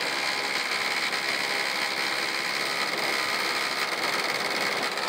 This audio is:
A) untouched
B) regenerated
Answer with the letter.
A